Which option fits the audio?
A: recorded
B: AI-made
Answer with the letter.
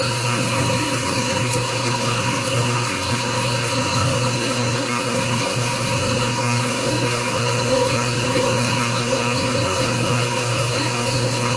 B